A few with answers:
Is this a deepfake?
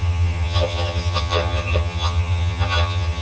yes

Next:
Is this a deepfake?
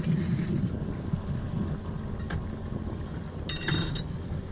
no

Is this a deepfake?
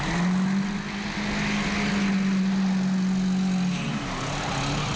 no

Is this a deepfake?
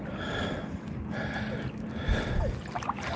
no